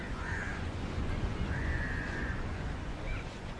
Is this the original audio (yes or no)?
no